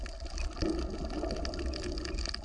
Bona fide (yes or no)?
yes